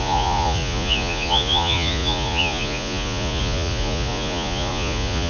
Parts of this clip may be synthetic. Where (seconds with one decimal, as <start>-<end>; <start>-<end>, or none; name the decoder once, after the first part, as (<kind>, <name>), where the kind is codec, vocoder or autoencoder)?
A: 0.0-5.3 (vocoder, Vocos)